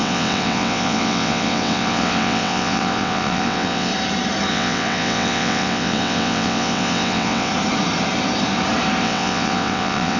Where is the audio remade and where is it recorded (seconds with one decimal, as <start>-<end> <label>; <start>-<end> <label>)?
0.0-3.9 remade; 3.9-4.5 recorded; 4.5-7.5 remade; 7.5-9.0 recorded; 9.0-10.2 remade